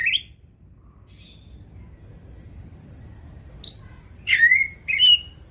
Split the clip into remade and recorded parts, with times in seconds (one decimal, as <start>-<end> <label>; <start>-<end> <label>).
0.0-5.5 recorded